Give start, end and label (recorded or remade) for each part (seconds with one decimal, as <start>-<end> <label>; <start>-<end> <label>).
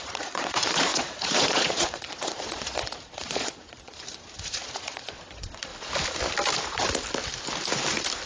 0.0-5.7 remade; 5.7-8.3 recorded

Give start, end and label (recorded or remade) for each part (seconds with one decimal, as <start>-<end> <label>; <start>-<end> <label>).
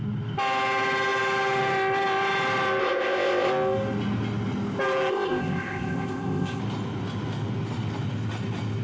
0.0-2.8 recorded; 2.8-3.5 remade; 3.5-5.1 recorded; 5.1-6.6 remade; 6.6-8.8 recorded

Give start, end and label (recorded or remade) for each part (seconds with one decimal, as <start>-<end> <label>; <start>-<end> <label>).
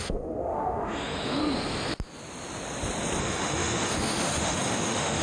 0.0-1.4 remade; 1.4-3.2 recorded; 3.2-5.2 remade